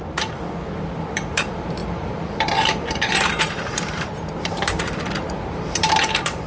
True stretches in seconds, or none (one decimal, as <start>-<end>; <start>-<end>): none

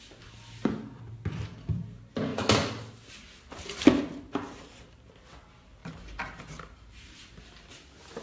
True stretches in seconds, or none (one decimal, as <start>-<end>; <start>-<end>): 0.0-5.8; 7.6-8.2

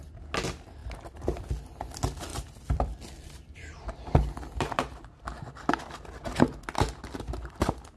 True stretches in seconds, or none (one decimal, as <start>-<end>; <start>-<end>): 0.0-0.8; 1.4-2.3; 5.8-8.0

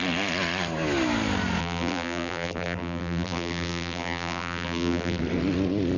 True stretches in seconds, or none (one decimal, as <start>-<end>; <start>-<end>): 0.0-1.6; 5.2-6.0

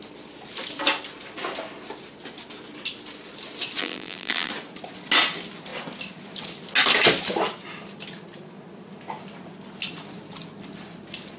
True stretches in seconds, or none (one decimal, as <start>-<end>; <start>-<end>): 0.0-3.8; 4.5-11.4

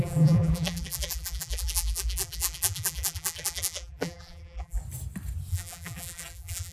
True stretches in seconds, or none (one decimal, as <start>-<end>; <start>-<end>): 4.8-5.5

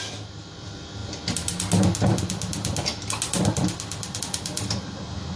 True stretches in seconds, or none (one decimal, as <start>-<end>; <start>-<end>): 1.0-4.2